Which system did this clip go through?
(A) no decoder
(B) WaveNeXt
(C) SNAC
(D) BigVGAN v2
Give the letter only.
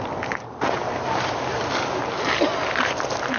A